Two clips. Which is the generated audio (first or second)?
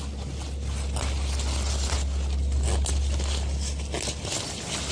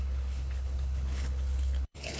second